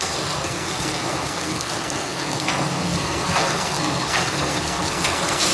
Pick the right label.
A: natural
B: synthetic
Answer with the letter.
B